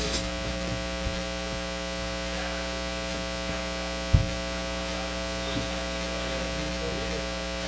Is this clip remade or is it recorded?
recorded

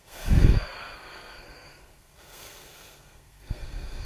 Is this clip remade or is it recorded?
remade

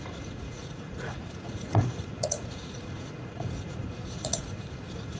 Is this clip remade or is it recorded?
remade